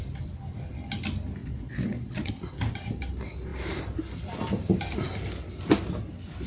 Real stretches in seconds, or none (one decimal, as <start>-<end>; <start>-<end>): 0.0-1.4; 2.3-6.5